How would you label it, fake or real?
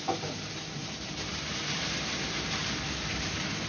fake